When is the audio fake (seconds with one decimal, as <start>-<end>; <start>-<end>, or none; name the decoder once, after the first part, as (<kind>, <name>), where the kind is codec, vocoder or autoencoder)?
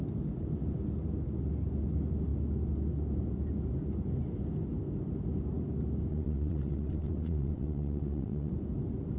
6.1-8.5 (vocoder, WaveNeXt)